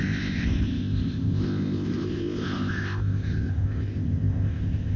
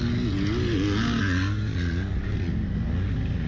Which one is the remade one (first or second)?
first